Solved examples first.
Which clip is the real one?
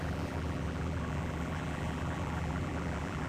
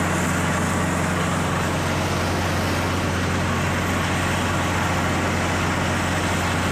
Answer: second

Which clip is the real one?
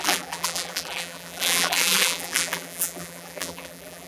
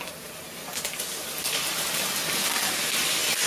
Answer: second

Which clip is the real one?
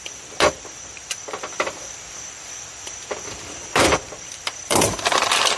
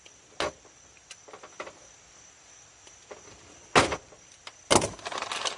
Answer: second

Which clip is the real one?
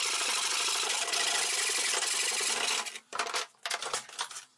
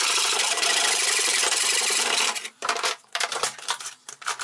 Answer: first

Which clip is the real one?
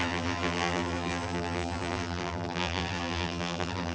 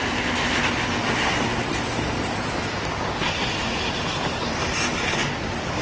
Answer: second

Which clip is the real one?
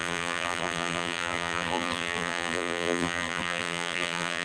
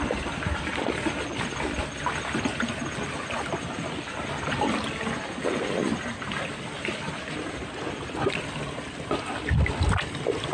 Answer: second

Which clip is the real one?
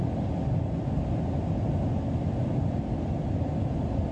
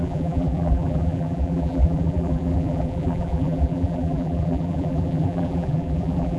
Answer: first